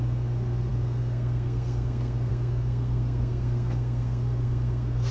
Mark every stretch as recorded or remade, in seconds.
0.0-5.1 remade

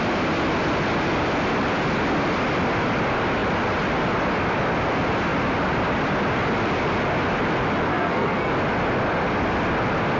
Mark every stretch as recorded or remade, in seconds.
0.0-7.9 recorded; 7.9-8.5 remade; 8.5-10.2 recorded

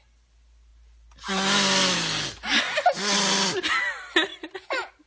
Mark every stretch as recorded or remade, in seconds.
0.0-5.1 recorded

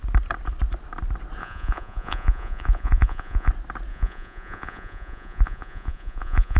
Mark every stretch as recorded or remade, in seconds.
0.0-1.4 recorded; 1.4-3.5 remade; 3.5-3.9 recorded; 3.9-6.6 remade